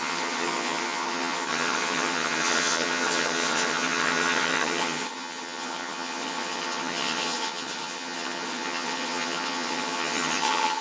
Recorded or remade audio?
remade